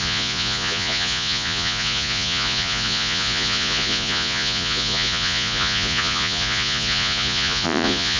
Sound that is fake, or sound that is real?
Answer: fake